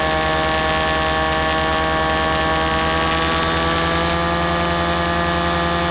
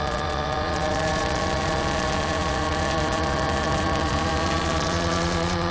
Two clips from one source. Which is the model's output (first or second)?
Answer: second